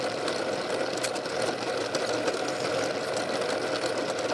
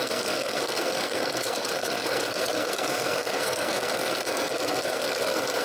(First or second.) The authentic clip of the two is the first